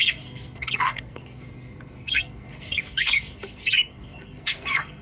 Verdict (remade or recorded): remade